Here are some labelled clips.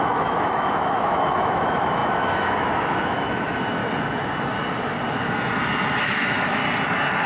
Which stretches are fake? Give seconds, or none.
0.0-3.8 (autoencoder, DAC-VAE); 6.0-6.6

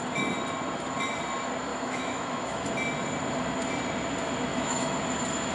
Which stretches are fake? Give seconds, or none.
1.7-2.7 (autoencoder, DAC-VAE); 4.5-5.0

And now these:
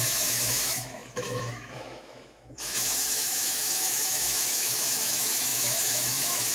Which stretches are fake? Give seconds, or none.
0.0-6.5 (autoencoder, DAC-VAE)